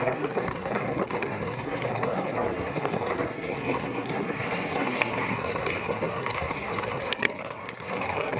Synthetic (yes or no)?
yes